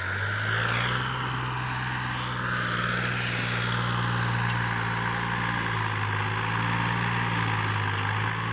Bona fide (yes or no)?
yes